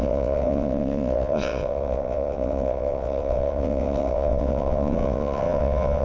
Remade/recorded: remade